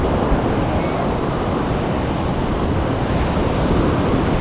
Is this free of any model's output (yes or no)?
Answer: yes